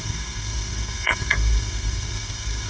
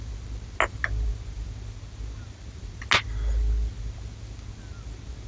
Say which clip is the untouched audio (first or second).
second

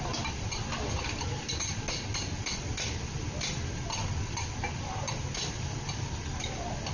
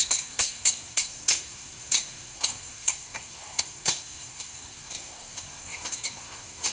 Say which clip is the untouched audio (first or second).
first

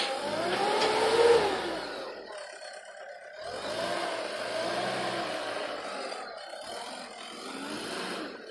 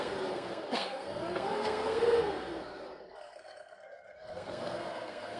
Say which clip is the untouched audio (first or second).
first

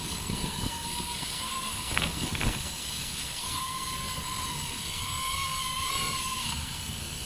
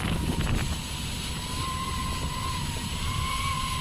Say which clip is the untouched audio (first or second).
second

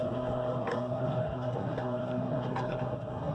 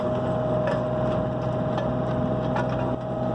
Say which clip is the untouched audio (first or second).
second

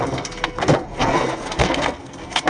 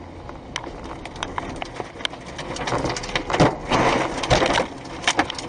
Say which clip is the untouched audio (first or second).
second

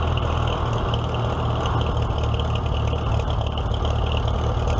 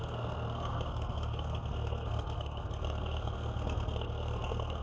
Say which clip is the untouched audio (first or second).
first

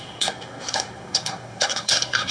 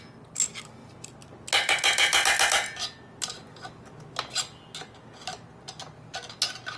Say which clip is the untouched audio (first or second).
second